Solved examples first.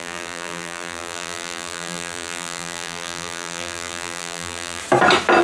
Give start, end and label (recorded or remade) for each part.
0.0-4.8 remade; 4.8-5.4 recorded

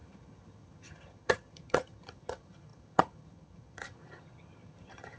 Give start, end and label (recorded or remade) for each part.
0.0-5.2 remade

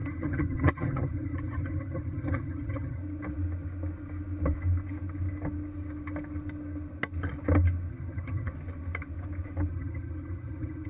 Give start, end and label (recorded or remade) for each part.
0.0-3.0 remade; 3.0-7.9 recorded; 7.9-8.5 remade; 8.5-9.7 recorded; 9.7-10.9 remade

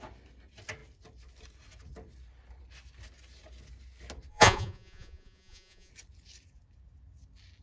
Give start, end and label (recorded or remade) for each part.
0.0-4.3 recorded; 4.3-5.9 remade; 5.9-7.6 recorded

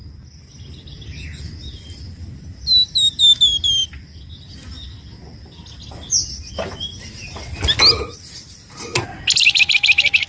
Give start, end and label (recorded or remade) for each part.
0.0-10.3 recorded

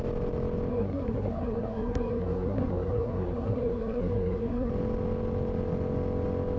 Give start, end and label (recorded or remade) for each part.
0.0-0.7 recorded; 0.7-4.7 remade; 4.7-6.6 recorded

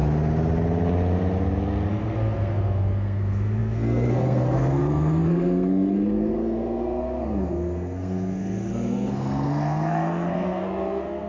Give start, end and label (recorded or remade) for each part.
0.0-1.9 recorded; 1.9-11.3 remade

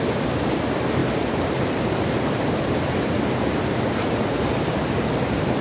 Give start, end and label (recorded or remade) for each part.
0.0-1.0 recorded; 1.0-4.4 remade; 4.4-5.6 recorded